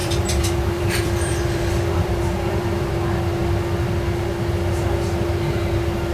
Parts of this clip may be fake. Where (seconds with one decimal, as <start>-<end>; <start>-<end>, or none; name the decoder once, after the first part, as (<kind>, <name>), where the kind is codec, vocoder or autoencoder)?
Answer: 0.0-2.9 (vocoder, BigVGAN v2)